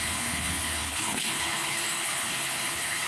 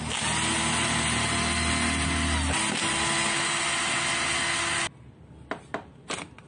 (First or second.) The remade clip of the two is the first